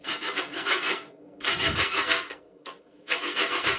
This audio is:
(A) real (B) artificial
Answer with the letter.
B